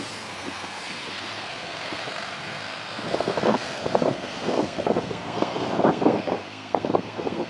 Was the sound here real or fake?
fake